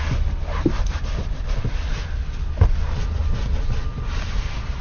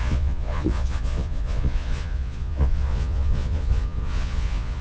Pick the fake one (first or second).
second